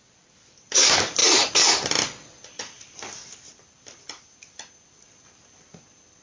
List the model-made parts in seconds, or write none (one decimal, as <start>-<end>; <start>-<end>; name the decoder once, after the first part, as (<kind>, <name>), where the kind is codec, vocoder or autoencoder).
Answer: none